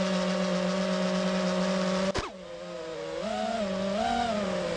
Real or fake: real